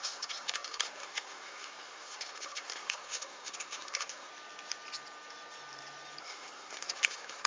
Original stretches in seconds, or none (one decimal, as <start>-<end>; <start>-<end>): 4.3-6.2